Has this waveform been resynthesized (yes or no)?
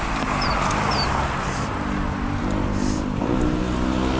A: no